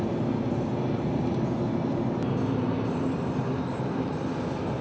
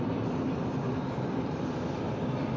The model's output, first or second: second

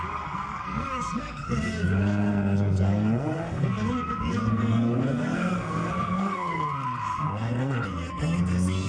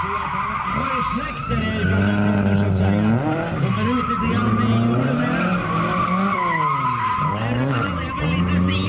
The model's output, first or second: first